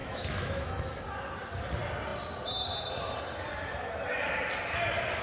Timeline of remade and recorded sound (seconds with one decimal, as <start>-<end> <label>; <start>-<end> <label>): 0.0-1.0 remade; 1.0-5.2 recorded